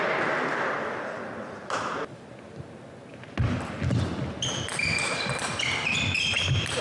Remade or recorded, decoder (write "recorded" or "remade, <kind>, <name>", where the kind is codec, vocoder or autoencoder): recorded